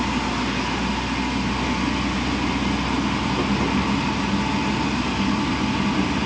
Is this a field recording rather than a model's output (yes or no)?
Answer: yes